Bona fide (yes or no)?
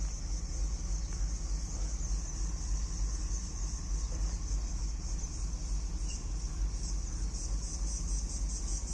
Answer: yes